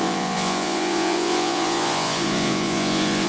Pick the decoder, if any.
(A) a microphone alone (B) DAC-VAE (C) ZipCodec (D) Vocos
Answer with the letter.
D